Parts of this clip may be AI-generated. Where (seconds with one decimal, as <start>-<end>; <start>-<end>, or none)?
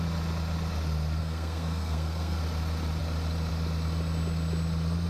1.2-2.4